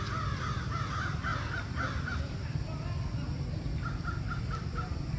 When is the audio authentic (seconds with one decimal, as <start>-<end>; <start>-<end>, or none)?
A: 0.0-5.2